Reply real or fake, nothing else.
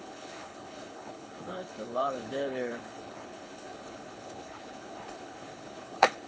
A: fake